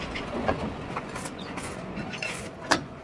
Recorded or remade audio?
remade